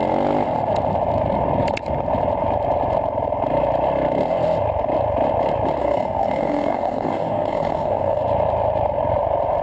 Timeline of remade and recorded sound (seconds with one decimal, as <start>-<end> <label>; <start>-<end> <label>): 0.0-5.8 recorded; 5.8-8.2 remade; 8.2-9.6 recorded